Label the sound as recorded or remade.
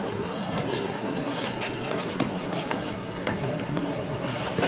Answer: remade